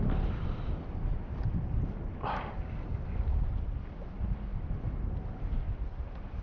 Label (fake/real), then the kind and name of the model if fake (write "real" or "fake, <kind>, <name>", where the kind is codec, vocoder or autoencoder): real